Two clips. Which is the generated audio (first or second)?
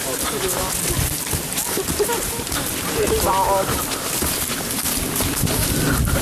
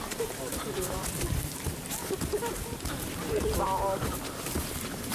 second